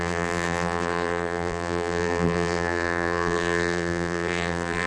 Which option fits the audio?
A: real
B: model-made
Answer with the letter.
B